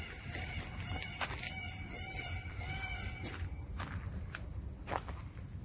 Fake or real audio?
real